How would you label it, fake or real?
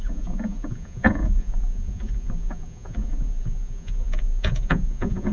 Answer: fake